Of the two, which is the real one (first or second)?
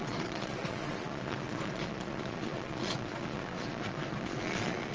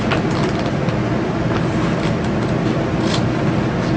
second